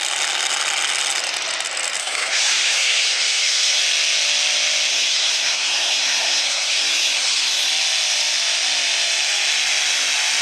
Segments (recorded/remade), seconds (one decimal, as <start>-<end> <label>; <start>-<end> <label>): 0.0-2.0 recorded; 2.0-3.8 remade; 3.8-4.9 recorded; 4.9-7.7 remade; 7.7-10.4 recorded